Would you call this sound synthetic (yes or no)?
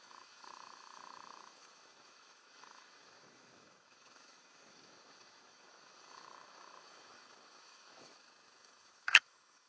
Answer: yes